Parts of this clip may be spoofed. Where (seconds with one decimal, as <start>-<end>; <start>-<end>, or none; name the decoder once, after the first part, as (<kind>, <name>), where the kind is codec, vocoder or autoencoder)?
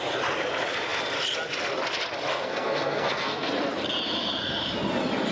2.3-3.5 (codec, SNAC)